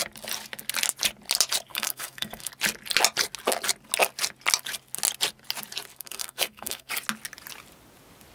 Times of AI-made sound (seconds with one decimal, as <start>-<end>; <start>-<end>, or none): 1.7-2.5; 5.9-6.9

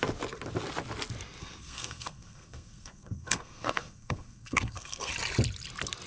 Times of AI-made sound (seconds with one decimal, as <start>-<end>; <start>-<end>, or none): 1.4-5.1

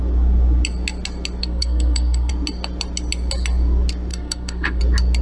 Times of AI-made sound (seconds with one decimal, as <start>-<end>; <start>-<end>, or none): 1.4-2.3; 4.1-4.8

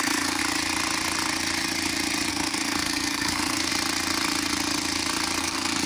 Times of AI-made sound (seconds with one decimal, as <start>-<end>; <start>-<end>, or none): 0.0-0.4; 2.3-3.7; 5.4-5.9

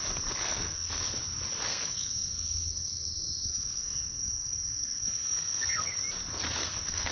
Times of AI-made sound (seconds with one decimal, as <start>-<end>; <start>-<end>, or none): 0.4-1.2; 1.7-6.0; 6.6-7.1

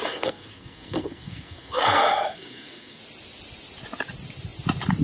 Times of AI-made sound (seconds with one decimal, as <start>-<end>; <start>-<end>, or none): 0.0-3.0